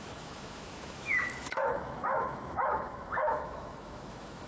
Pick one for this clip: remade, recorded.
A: remade